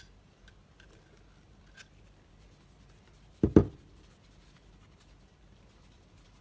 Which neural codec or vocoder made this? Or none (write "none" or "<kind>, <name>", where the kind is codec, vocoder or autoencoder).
none